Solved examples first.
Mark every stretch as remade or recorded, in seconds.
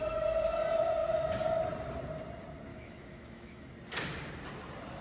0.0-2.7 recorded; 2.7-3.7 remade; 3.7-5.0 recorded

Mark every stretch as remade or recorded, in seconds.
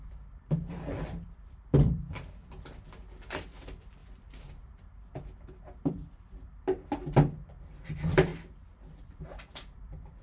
0.0-8.3 remade; 8.3-9.1 recorded; 9.1-10.2 remade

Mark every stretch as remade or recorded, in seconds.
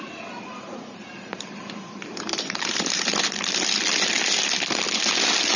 0.0-0.5 recorded; 0.5-3.1 remade; 3.1-5.6 recorded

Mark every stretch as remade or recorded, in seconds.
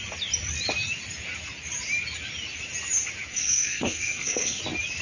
0.0-3.3 recorded; 3.3-4.6 remade; 4.6-5.0 recorded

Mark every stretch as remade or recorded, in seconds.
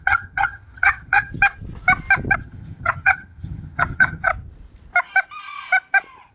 0.0-1.3 remade; 1.3-2.4 recorded; 2.4-4.3 remade; 4.3-6.3 recorded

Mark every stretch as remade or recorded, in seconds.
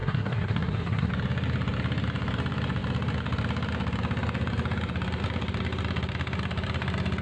0.0-1.1 remade; 1.1-7.2 recorded